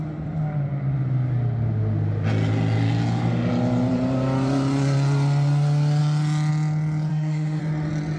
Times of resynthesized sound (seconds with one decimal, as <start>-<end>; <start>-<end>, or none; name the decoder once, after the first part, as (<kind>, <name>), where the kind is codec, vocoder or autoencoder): 7.1-7.6 (autoencoder, DAC-VAE)